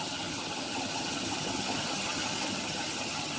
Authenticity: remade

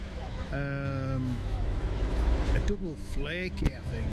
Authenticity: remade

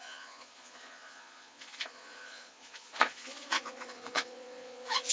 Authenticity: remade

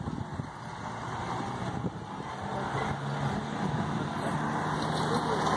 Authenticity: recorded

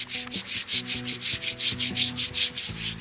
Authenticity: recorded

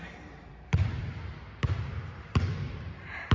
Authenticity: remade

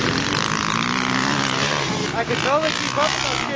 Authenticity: recorded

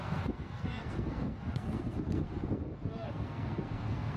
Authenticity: remade